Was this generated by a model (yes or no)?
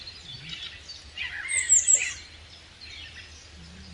no